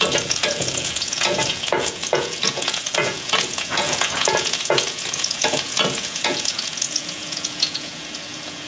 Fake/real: fake